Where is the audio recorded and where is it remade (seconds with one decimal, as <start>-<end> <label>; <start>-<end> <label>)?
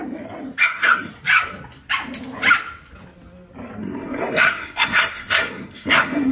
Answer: 0.0-0.6 recorded; 0.6-1.1 remade; 1.1-3.8 recorded; 3.8-6.3 remade